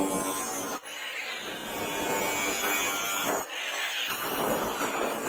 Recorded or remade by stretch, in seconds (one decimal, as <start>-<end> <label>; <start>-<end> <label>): 0.0-5.3 recorded